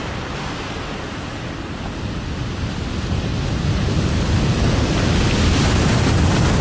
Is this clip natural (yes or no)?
yes